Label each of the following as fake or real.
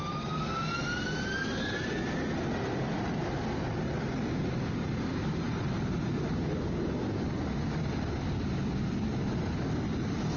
real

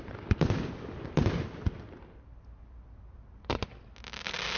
real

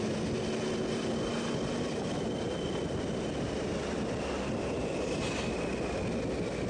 real